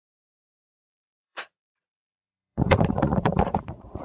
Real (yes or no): no